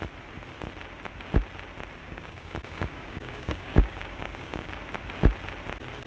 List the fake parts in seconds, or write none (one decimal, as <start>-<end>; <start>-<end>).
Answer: 2.0-4.8